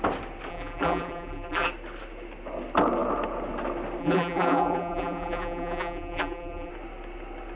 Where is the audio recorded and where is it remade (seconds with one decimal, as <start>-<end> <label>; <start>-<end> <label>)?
0.0-0.5 recorded; 0.5-1.7 remade; 1.7-4.0 recorded; 4.0-6.7 remade; 6.7-7.6 recorded